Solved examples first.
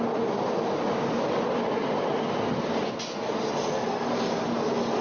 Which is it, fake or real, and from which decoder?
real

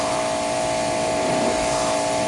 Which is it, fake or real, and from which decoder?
real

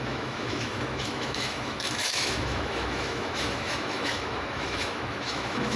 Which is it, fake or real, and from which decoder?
fake, autoencoder, DAC-VAE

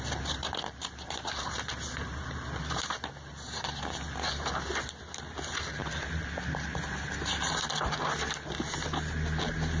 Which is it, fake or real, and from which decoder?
real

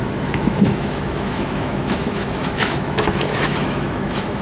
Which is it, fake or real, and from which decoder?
fake, autoencoder, DAC-VAE